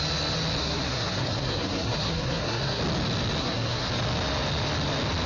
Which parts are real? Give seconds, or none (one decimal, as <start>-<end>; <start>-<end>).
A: 0.0-0.6; 2.8-3.4; 3.9-5.3